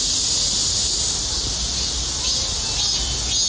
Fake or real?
real